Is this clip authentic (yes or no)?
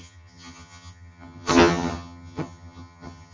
no